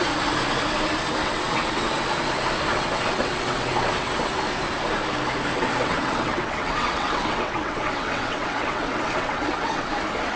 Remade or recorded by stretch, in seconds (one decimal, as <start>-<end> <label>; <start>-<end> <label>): 0.0-1.2 recorded; 1.2-1.9 remade; 1.9-2.7 recorded; 2.7-4.3 remade; 4.3-5.5 recorded; 5.5-9.9 remade; 9.9-10.4 recorded